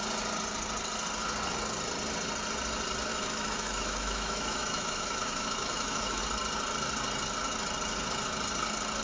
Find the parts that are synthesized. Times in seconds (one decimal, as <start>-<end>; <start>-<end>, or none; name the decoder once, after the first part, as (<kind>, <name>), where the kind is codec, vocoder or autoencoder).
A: 3.1-6.2 (autoencoder, DAC-VAE)